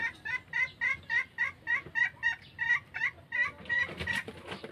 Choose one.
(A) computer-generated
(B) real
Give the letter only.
B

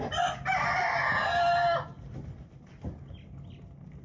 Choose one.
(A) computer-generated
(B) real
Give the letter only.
B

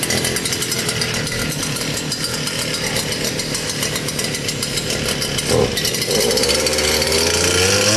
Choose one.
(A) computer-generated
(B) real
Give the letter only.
B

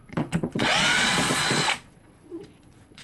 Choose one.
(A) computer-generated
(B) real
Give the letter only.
A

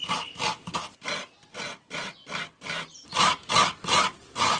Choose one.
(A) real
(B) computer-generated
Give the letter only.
A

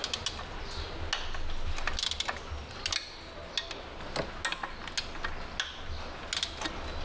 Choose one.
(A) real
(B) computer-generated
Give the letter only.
A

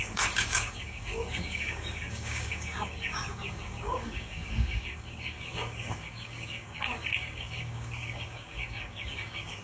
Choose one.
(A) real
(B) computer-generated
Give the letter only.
B